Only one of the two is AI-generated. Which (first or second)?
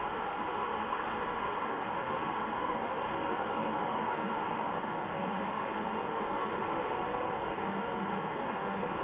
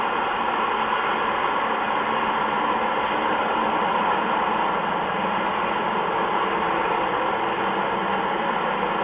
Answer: first